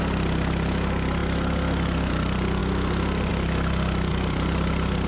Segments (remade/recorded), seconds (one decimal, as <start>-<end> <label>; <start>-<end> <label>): 0.0-4.1 recorded; 4.1-5.1 remade